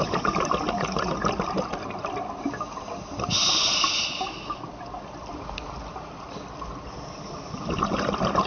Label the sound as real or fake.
real